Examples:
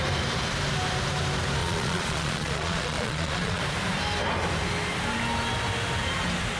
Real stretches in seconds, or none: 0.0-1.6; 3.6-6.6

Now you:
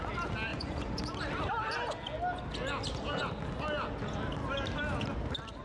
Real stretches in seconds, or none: 0.0-0.5; 1.0-5.6

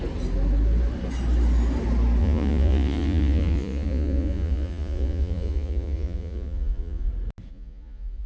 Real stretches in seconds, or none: 0.0-2.2; 7.1-7.5

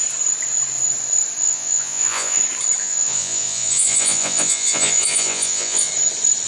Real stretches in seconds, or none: 0.0-1.4; 2.4-2.8; 5.9-6.5

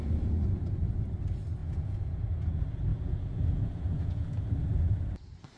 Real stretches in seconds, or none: 0.0-1.6; 2.2-2.9; 4.5-5.6

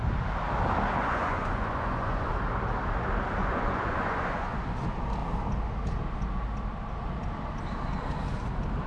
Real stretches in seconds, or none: 0.0-1.0; 2.3-3.4; 4.6-8.9

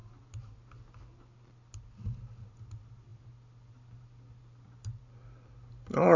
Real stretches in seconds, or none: 0.0-6.2